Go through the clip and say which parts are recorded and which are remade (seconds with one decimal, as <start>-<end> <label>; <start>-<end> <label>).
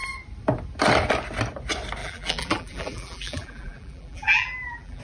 0.0-2.0 recorded; 2.0-5.0 remade